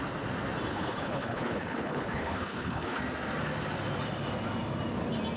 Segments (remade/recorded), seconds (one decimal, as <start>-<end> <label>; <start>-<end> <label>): 0.0-0.7 recorded; 0.7-3.0 remade; 3.0-5.4 recorded